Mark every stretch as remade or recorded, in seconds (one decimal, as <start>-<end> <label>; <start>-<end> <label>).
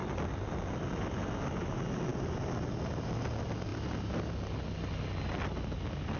0.0-6.2 recorded